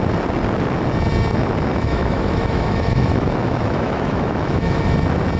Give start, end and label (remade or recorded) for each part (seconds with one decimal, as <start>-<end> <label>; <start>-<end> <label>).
0.0-1.7 recorded; 1.7-4.9 remade; 4.9-5.4 recorded